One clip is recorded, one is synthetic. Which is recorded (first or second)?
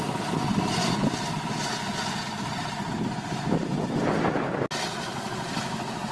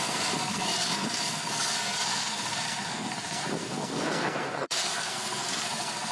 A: first